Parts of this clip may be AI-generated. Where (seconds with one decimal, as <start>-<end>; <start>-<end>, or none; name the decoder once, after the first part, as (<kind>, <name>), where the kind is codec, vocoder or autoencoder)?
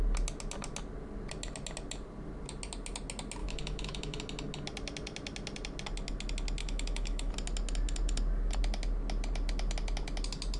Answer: 3.4-4.2 (autoencoder, DAC-VAE); 6.6-7.3